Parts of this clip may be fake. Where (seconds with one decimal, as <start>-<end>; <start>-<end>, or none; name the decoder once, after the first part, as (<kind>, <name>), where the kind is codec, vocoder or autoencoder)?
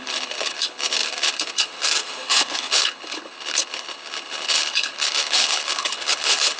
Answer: 0.0-6.6 (codec, HILCodec)